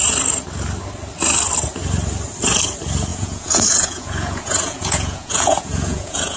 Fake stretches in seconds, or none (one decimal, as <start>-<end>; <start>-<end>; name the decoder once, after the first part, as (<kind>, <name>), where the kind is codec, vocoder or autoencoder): 3.1-6.4 (vocoder, Vocos)